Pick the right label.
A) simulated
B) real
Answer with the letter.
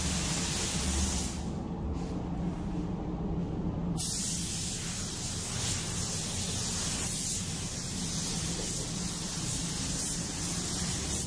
B